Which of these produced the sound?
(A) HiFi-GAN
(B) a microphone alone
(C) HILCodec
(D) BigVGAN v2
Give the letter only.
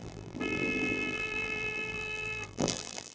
D